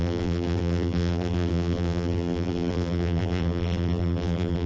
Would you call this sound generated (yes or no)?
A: yes